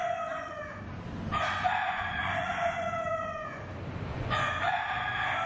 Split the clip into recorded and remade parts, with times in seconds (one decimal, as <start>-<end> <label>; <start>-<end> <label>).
0.0-0.8 remade; 0.8-1.3 recorded; 1.3-3.6 remade; 3.6-4.1 recorded; 4.1-4.8 remade; 4.8-5.5 recorded